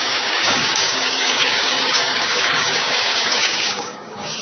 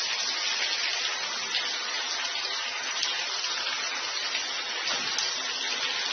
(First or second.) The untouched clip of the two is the second